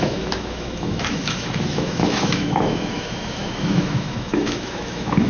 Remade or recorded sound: remade